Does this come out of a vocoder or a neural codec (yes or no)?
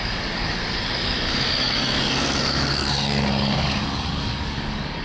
yes